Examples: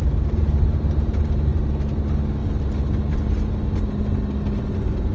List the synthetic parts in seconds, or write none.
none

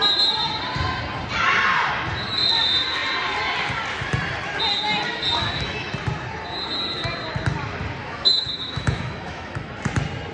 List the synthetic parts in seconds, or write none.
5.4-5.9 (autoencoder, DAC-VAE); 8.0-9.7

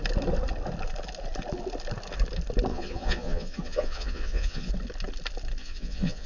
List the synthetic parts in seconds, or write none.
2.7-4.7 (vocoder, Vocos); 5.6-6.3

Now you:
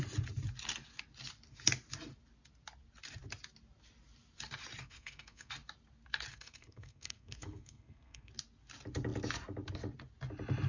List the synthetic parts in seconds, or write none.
4.8-5.5 (codec, SNAC); 6.3-8.3

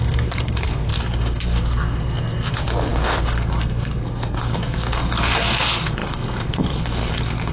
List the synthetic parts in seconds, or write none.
0.0-7.5 (codec, SNAC)

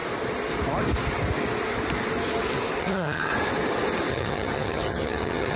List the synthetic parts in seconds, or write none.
2.8-3.3 (vocoder, HiFi-GAN); 4.1-5.6